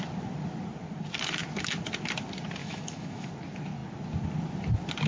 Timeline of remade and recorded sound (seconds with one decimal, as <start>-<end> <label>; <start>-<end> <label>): 0.0-2.6 recorded; 2.6-3.3 remade; 3.3-5.1 recorded